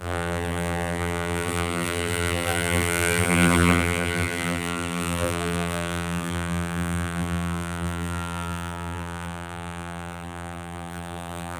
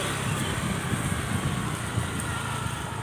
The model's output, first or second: first